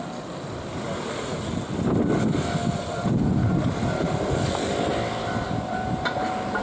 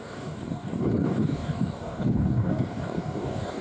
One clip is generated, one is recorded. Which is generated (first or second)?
second